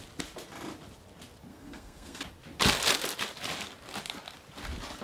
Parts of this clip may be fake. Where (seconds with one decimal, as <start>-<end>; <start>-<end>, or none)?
1.5-2.2

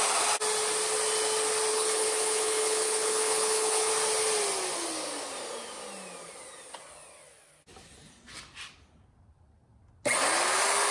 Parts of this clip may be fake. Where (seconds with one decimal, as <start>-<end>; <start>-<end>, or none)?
1.7-3.9

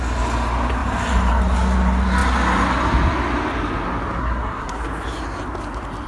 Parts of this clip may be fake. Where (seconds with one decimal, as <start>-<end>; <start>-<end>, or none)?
4.2-4.8

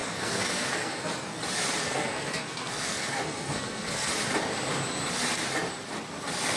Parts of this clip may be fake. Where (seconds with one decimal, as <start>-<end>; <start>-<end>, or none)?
0.0-1.4; 1.8-4.1

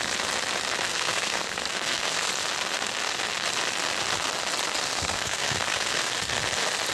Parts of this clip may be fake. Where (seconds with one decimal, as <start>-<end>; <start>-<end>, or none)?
0.9-2.3; 4.9-6.1

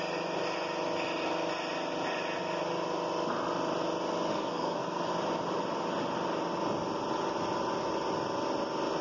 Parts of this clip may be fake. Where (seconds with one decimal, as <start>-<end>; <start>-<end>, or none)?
4.3-5.1

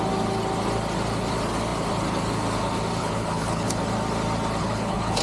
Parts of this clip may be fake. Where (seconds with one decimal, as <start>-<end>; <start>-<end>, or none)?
3.0-3.8; 4.6-5.2

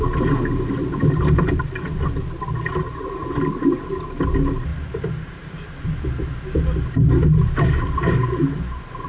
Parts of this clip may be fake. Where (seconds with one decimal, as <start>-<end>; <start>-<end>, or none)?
4.7-5.9